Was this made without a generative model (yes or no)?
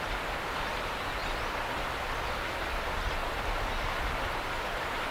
yes